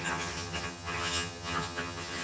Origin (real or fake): fake